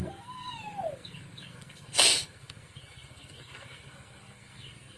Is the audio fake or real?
fake